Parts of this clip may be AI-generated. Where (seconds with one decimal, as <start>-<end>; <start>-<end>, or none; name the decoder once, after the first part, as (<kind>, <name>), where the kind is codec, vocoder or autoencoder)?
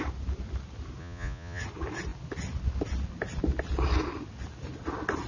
1.0-1.6 (vocoder, Vocos)